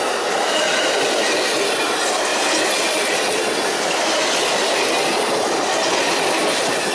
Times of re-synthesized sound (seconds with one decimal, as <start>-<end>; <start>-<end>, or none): none